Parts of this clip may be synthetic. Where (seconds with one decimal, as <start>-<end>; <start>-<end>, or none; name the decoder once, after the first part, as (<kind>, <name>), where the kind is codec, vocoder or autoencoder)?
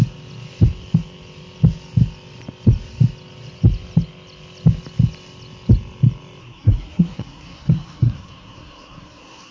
6.4-9.5 (codec, SNAC)